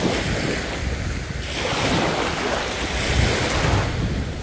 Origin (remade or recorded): recorded